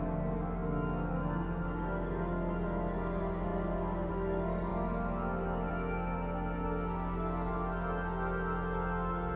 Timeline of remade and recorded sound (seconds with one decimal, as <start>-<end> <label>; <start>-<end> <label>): 0.0-9.4 recorded